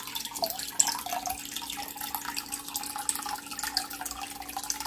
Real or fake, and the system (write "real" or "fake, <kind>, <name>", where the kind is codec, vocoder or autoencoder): real